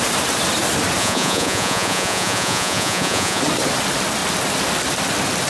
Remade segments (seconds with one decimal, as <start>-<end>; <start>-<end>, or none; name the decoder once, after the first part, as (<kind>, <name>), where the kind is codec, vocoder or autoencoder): 1.0-3.4 (vocoder, Vocos)